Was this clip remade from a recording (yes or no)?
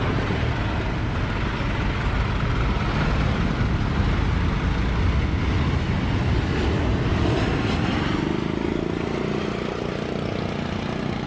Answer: no